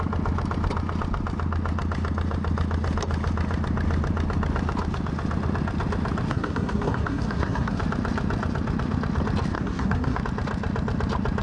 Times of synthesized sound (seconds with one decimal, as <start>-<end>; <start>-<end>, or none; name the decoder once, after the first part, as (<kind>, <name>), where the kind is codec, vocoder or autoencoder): 6.3-7.8 (codec, SNAC); 9.5-10.2